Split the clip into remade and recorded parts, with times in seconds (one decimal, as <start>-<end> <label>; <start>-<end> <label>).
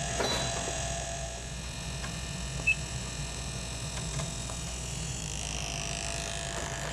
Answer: 0.0-5.2 remade; 5.2-6.9 recorded